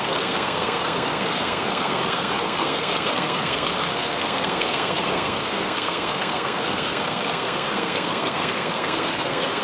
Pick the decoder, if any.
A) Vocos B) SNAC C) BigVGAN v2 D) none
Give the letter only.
B